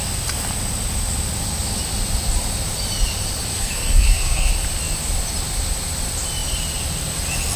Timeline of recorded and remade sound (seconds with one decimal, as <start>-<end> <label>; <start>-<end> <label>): 0.0-3.5 recorded; 3.5-4.5 remade; 4.5-7.6 recorded

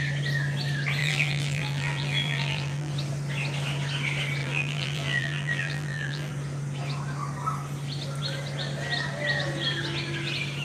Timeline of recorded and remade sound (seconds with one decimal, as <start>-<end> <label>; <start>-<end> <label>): 0.0-1.0 recorded; 1.0-2.9 remade; 2.9-4.4 recorded; 4.4-6.3 remade; 6.3-10.6 recorded

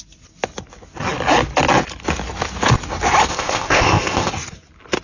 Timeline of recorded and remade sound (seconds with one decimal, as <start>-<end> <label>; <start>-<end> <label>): 0.0-3.3 recorded; 3.3-4.3 remade; 4.3-5.0 recorded

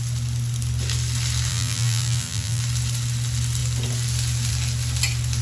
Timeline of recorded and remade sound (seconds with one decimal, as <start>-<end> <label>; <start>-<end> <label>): 0.0-1.5 recorded; 1.5-2.6 remade; 2.6-5.4 recorded

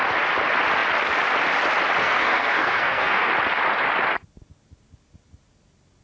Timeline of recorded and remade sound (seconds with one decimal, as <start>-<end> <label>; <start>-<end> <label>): 0.0-2.0 recorded; 2.0-3.3 remade; 3.3-6.0 recorded

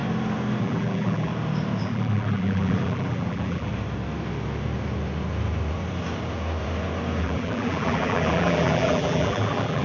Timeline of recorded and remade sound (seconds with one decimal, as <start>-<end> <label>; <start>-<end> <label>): 0.0-0.6 recorded; 0.6-1.3 remade; 1.3-1.8 recorded; 1.8-3.7 remade; 3.7-7.2 recorded; 7.2-9.8 remade

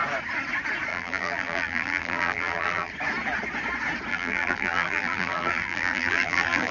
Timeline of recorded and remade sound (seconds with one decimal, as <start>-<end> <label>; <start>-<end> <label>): 0.0-0.9 recorded; 0.9-2.9 remade; 2.9-4.1 recorded; 4.1-6.7 remade